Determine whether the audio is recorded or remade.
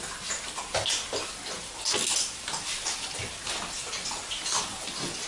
recorded